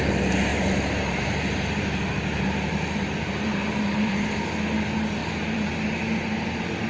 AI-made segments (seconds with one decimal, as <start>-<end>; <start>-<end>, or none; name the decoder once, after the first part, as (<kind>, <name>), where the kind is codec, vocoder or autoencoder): 0.5-4.6 (vocoder, BigVGAN v2); 5.2-6.9